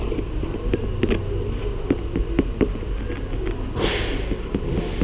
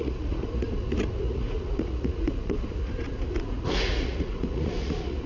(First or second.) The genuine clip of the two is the first